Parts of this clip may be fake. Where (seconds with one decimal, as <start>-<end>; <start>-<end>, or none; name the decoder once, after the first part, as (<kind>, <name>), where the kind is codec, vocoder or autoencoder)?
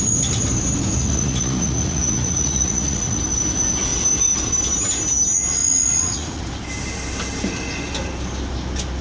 1.0-3.2 (vocoder, Vocos); 5.6-6.4